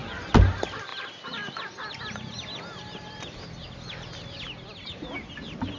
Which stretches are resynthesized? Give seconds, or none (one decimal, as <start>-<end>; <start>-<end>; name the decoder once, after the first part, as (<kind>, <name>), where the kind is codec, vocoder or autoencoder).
none